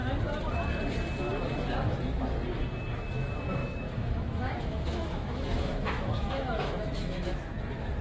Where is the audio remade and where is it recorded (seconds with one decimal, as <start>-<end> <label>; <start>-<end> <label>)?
0.0-3.6 recorded; 3.6-7.5 remade; 7.5-8.0 recorded